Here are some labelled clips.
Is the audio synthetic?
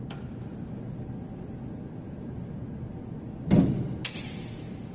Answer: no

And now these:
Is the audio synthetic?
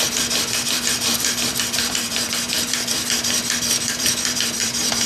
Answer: yes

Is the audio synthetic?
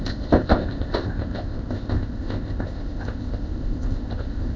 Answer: yes